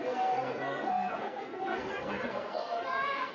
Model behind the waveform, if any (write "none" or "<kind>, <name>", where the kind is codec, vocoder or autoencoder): codec, SNAC